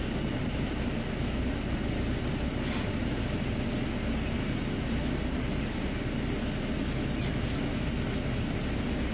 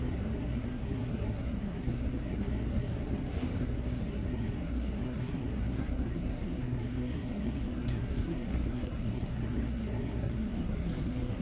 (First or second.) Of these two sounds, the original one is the first